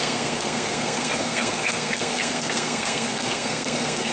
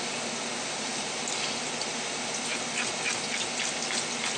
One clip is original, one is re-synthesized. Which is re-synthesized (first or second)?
first